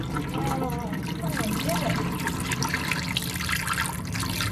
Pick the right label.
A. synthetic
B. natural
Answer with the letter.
B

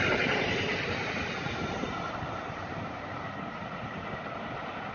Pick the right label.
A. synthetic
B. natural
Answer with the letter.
B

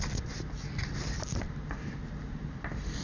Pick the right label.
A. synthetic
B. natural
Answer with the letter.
B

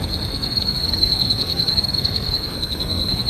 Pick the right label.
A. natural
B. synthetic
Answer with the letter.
B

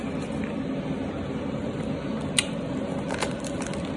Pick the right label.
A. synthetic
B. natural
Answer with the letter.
B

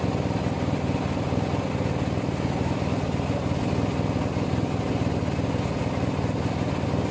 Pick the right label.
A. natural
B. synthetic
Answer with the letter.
A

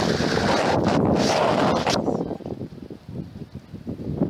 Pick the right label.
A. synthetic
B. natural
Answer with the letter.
B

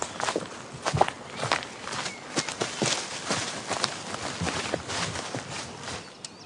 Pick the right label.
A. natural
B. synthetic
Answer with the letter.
A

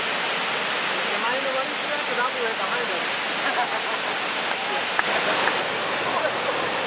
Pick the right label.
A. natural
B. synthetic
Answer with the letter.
A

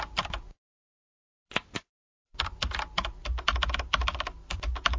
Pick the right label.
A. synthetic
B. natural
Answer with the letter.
B